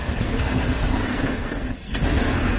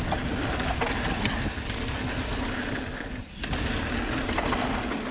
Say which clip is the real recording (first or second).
second